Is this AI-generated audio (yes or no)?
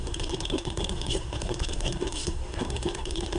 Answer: yes